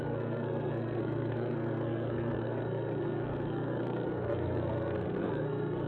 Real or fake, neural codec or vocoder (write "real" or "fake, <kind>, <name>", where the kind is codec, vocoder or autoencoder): fake, codec, SNAC